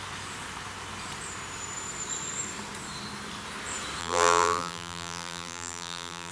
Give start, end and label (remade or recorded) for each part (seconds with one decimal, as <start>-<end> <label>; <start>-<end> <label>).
0.0-4.0 recorded; 4.0-6.3 remade